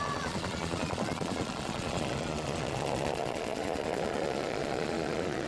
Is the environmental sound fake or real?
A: fake